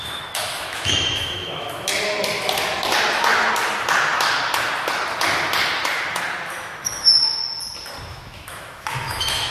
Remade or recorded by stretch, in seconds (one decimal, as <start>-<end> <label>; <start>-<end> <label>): 0.0-1.9 remade; 1.9-6.5 recorded; 6.5-7.4 remade; 7.4-8.1 recorded; 8.1-9.5 remade